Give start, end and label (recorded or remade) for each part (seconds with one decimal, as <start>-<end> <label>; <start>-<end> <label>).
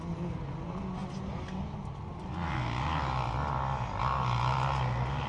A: 0.0-5.3 recorded